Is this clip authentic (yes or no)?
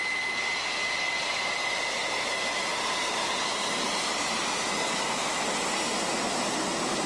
yes